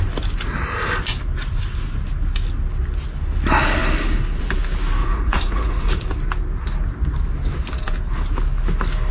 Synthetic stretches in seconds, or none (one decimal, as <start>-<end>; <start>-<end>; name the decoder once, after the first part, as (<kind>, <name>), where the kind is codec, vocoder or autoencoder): 5.0-6.1 (vocoder, Vocos)